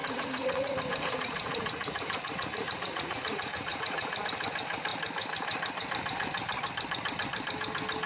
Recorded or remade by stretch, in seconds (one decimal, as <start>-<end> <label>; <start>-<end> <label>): 0.0-4.2 remade; 4.2-8.1 recorded